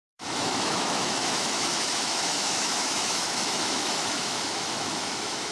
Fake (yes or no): yes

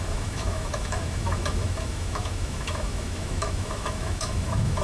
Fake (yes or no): yes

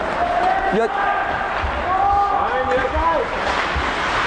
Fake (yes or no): no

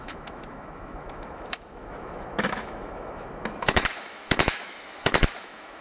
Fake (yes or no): yes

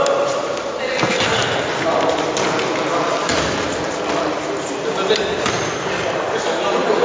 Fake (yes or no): no